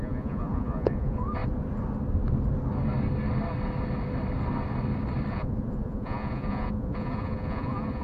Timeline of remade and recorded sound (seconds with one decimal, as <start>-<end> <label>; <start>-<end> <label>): 0.0-1.4 remade; 1.4-5.3 recorded; 5.3-8.0 remade